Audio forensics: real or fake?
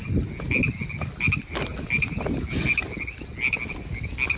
real